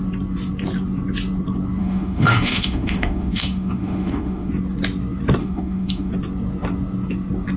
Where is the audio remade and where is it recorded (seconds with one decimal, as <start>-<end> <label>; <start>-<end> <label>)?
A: 0.0-1.8 recorded; 1.8-4.5 remade; 4.5-5.4 recorded; 5.4-6.1 remade; 6.1-7.6 recorded